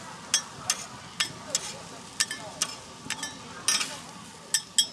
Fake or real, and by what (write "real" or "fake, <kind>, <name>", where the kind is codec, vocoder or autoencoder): real